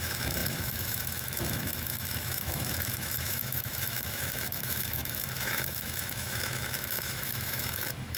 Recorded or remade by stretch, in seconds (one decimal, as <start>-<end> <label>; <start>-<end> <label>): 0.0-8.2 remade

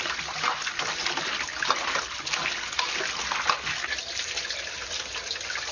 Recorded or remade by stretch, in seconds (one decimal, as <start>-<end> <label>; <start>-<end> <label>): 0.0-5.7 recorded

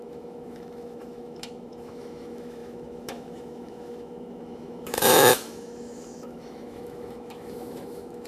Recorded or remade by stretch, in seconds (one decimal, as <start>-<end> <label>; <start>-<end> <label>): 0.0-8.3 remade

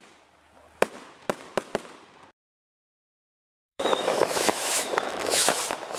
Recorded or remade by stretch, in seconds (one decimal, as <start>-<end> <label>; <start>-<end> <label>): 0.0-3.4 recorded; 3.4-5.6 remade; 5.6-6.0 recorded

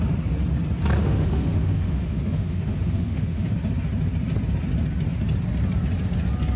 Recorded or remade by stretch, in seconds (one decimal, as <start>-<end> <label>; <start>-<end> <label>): 0.0-1.0 recorded; 1.0-3.5 remade; 3.5-6.6 recorded

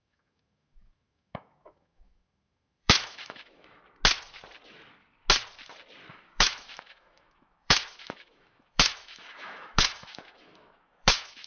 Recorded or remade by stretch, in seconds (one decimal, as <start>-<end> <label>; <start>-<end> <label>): 0.0-3.8 remade; 3.8-6.1 recorded; 6.1-11.5 remade